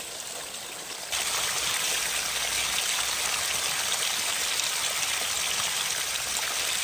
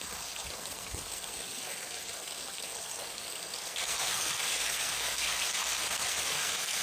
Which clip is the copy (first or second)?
second